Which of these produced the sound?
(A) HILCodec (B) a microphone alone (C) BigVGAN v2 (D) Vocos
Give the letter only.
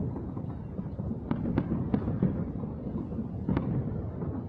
B